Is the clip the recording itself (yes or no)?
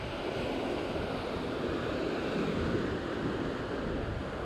yes